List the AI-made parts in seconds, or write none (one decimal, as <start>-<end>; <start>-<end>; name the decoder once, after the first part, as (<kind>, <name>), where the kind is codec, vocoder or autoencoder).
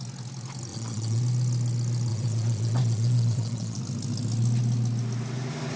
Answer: 0.7-1.2 (vocoder, Vocos); 2.1-3.8